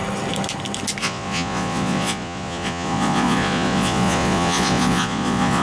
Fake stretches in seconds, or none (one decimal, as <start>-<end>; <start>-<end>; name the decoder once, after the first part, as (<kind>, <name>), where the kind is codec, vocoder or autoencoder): 1.0-5.6 (vocoder, Vocos)

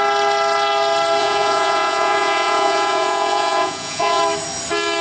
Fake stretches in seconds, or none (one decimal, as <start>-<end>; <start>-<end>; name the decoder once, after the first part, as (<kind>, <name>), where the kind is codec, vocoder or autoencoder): 1.2-4.2 (vocoder, Vocos)

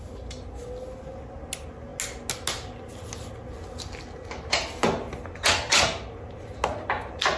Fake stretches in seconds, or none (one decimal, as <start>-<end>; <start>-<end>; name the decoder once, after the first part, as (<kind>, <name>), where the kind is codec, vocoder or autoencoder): none

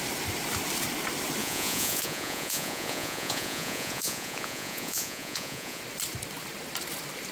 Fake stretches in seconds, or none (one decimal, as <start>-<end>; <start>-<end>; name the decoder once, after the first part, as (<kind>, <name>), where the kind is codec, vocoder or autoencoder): 1.4-5.8 (vocoder, Vocos)

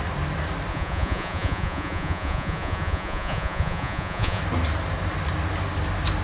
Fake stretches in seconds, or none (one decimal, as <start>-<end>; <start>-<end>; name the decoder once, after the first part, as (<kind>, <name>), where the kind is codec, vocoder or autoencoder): 0.7-4.4 (vocoder, Vocos)

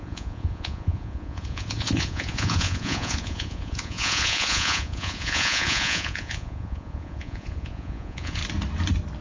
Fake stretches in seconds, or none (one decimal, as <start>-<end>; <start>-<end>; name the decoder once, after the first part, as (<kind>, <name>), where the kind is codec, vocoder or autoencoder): 0.0-8.4 (vocoder, Vocos)